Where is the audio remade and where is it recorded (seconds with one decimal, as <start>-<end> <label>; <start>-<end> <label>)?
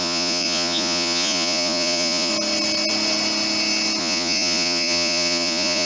0.0-2.3 remade; 2.3-4.0 recorded; 4.0-5.8 remade